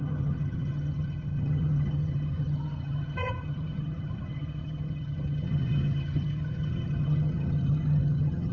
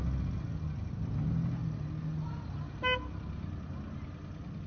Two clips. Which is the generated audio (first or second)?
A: first